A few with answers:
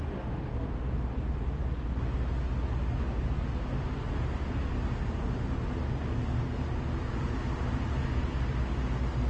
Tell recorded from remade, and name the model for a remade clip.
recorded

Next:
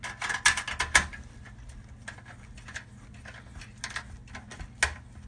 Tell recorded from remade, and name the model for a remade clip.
recorded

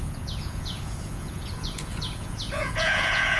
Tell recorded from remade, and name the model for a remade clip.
remade, vocoder, Vocos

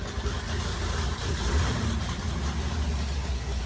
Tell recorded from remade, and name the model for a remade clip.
recorded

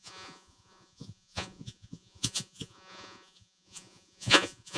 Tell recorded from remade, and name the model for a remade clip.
remade, vocoder, Vocos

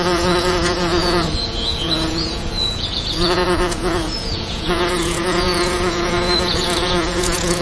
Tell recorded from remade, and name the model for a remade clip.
remade, vocoder, Vocos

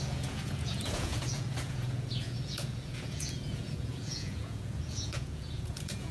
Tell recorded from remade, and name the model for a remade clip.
remade, vocoder, Vocos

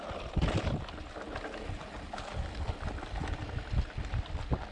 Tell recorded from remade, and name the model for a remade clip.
recorded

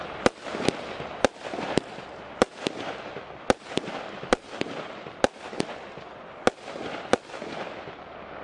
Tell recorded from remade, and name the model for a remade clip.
recorded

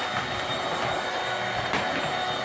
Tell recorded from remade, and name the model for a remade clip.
recorded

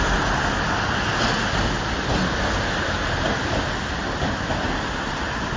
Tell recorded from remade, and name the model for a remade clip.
recorded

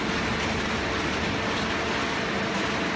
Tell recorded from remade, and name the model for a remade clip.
recorded